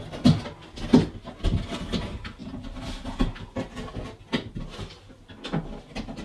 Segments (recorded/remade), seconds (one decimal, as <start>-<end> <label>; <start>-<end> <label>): 0.0-6.2 recorded